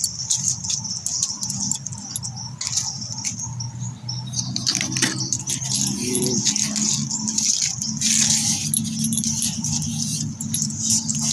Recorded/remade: recorded